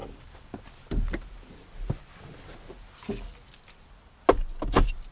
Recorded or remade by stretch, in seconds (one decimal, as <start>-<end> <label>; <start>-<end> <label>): 0.0-5.1 recorded